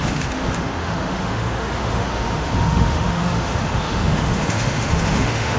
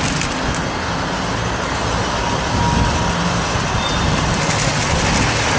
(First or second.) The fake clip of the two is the first